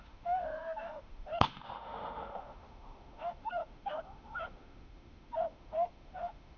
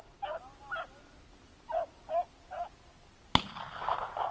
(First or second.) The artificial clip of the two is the first